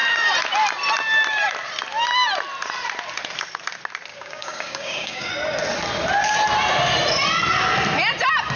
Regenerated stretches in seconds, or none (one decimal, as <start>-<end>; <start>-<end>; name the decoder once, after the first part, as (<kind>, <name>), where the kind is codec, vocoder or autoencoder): 4.1-5.3 (codec, DAC)